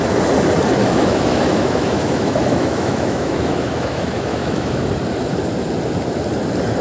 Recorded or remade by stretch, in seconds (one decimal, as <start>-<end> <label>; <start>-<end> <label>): 0.0-0.8 recorded; 0.8-4.9 remade; 4.9-6.8 recorded